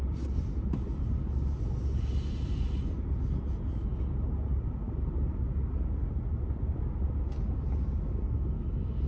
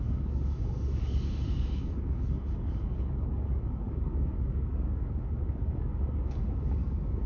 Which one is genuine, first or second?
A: first